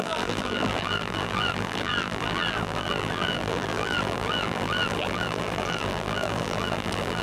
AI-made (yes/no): yes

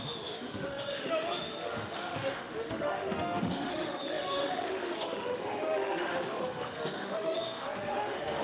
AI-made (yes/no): yes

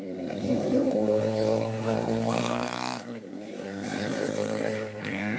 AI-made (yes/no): yes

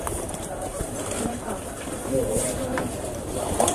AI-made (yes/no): yes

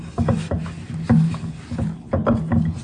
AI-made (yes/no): no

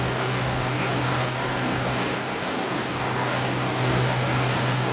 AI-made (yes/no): yes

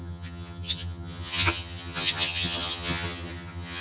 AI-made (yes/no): yes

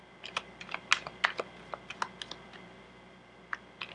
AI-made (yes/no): no